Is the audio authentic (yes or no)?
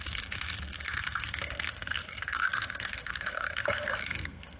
no